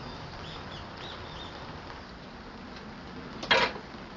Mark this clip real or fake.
real